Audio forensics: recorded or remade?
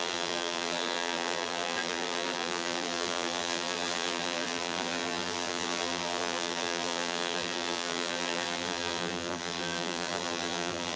remade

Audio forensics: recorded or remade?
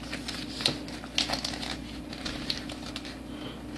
recorded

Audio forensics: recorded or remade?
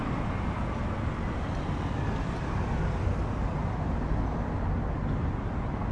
recorded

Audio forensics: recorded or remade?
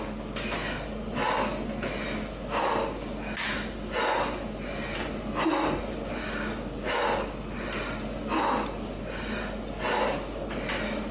recorded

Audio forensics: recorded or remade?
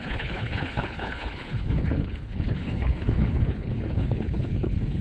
remade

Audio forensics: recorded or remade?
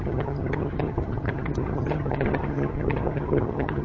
remade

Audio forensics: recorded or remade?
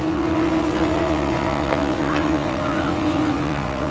remade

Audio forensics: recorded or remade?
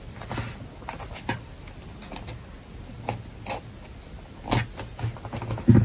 recorded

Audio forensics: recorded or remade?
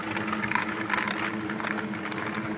recorded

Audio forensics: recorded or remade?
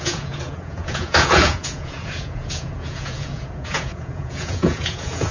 remade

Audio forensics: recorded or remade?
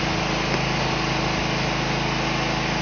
recorded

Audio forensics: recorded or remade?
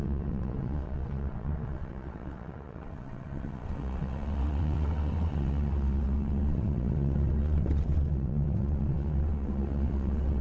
remade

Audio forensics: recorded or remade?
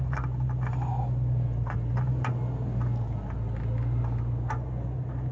recorded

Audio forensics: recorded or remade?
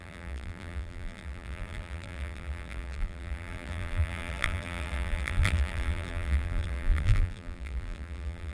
remade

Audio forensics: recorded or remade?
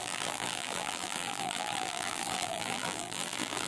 remade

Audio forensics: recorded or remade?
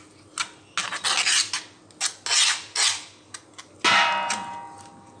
recorded